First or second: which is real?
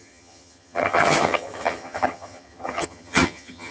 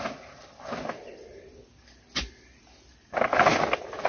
second